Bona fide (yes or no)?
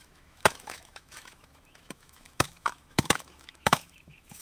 no